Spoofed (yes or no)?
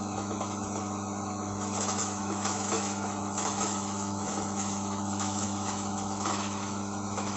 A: yes